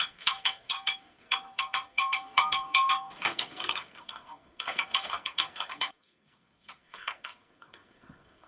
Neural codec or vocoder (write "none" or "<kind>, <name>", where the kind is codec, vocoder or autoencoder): codec, SNAC